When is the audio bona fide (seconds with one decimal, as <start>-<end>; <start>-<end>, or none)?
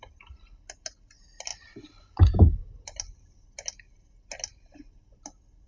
0.0-5.7